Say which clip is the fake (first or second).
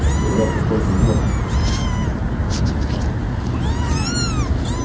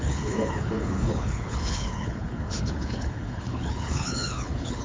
second